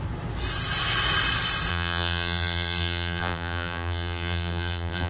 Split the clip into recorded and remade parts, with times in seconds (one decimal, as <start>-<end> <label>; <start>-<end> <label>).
0.0-1.7 recorded; 1.7-5.1 remade